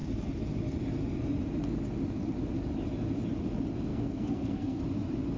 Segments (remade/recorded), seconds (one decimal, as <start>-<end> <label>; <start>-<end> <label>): 0.0-3.9 recorded; 3.9-4.8 remade; 4.8-5.4 recorded